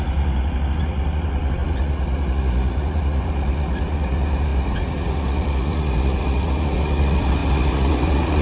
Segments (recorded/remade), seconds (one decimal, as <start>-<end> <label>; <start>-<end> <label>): 0.0-8.4 remade